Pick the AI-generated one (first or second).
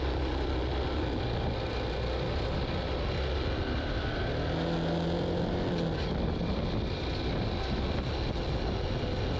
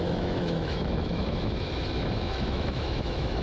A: second